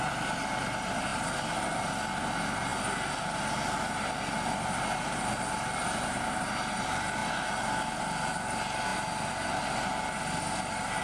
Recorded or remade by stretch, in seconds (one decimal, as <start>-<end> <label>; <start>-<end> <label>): 0.0-11.0 recorded